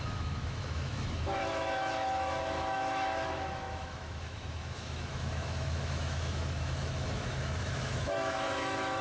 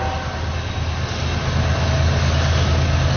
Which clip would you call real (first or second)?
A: second